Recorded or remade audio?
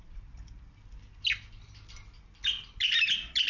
recorded